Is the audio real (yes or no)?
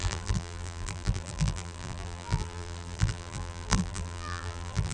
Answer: no